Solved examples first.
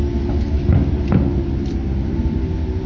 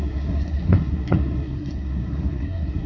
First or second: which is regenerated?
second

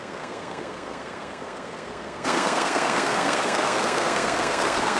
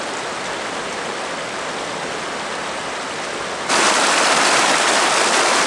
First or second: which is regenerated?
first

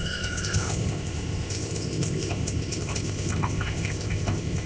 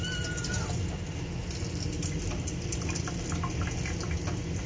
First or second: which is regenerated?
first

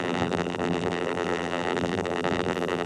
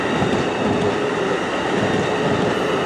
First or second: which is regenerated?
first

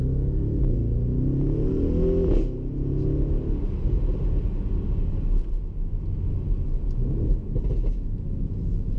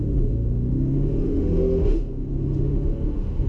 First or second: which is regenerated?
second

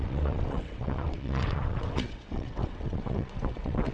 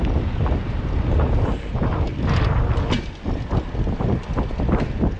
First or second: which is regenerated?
first